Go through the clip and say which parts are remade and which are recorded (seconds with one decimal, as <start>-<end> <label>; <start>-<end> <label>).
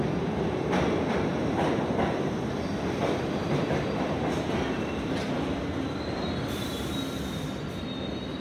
0.0-1.3 recorded; 1.3-2.7 remade; 2.7-3.4 recorded; 3.4-4.5 remade; 4.5-8.4 recorded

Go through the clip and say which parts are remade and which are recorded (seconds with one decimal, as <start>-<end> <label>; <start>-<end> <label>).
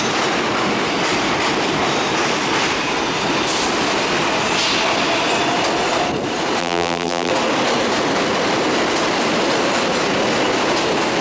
0.0-6.6 recorded; 6.6-7.3 remade; 7.3-11.2 recorded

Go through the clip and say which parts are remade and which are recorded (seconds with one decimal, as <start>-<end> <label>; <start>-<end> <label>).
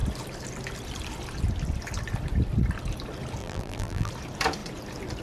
0.0-3.4 recorded; 3.4-4.1 remade; 4.1-5.2 recorded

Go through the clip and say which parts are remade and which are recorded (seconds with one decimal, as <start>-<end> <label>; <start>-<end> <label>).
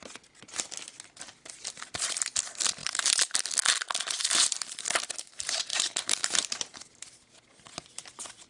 0.0-2.8 recorded; 2.8-3.5 remade; 3.5-5.7 recorded; 5.7-7.4 remade; 7.4-8.5 recorded